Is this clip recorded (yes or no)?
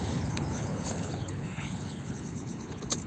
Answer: no